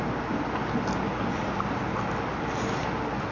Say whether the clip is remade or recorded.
recorded